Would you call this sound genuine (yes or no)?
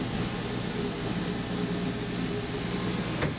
yes